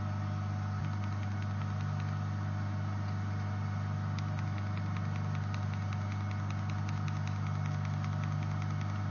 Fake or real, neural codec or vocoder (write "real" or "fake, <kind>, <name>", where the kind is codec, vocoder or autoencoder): real